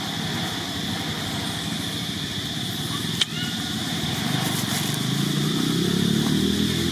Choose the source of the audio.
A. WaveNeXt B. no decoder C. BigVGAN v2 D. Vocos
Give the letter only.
C